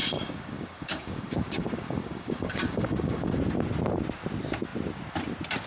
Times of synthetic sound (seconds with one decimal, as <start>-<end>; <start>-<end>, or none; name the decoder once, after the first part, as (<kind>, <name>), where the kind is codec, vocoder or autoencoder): 0.0-3.4 (codec, DAC)

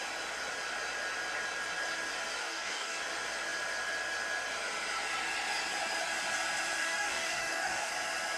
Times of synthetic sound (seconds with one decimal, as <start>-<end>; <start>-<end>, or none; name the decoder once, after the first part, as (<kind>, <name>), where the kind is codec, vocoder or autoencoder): 2.4-3.0 (codec, DAC); 6.8-7.9

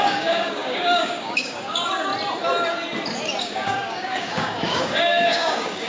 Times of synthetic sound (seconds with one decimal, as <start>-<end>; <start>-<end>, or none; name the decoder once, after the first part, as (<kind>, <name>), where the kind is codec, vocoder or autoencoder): 0.0-2.1 (codec, DAC); 3.4-5.9

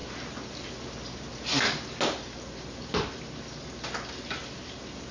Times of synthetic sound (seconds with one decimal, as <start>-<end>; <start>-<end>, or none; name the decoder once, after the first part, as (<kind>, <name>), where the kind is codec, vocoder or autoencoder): none

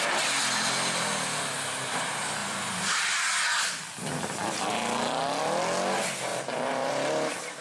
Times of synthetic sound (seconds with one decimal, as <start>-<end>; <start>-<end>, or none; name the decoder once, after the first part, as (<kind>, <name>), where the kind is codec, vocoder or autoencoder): none